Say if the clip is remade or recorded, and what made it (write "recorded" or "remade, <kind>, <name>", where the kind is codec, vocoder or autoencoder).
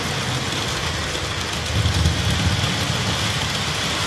recorded